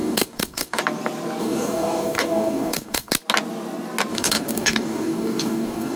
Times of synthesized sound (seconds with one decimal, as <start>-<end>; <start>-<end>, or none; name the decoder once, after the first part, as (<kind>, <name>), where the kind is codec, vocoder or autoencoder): 0.0-0.8 (codec, DAC); 1.4-3.1; 4.1-6.0